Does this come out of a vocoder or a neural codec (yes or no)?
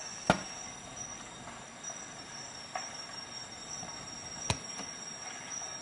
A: no